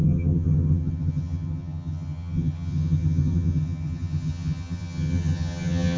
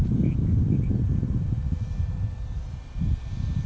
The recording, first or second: second